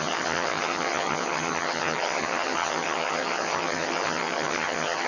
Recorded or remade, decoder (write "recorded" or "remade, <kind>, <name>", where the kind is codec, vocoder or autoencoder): remade, vocoder, HiFi-GAN